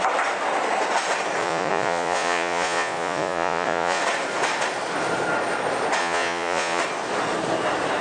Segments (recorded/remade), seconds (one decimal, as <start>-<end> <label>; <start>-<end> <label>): 0.0-1.4 recorded; 1.4-4.0 remade; 4.0-6.0 recorded; 6.0-6.8 remade; 6.8-8.0 recorded

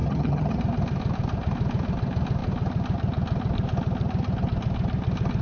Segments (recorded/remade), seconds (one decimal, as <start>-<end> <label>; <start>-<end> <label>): 0.0-0.6 remade; 0.6-5.4 recorded

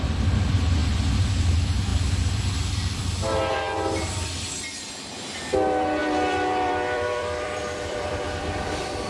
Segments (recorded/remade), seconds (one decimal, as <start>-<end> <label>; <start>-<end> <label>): 0.0-0.8 recorded; 0.8-1.3 remade; 1.3-1.9 recorded; 1.9-3.0 remade; 3.0-6.0 recorded; 6.0-9.1 remade